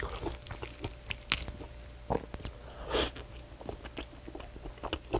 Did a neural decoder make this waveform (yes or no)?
no